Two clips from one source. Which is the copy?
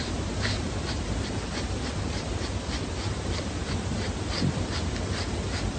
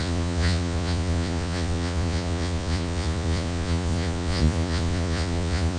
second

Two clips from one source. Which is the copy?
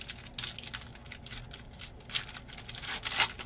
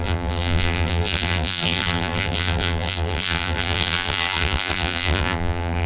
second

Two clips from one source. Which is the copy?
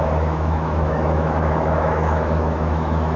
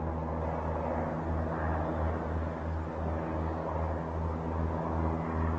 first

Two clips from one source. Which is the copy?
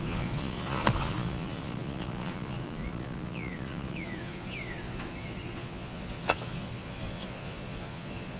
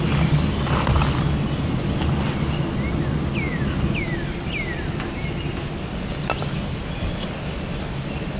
first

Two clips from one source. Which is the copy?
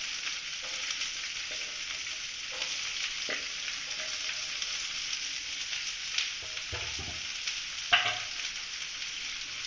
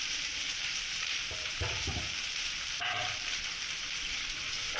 second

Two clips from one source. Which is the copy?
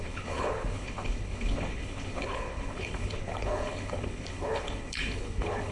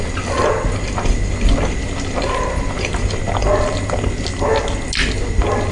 first